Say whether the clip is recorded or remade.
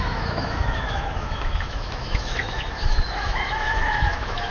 remade